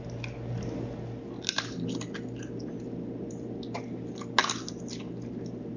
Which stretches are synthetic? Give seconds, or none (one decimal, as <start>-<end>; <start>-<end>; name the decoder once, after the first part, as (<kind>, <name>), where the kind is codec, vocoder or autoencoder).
none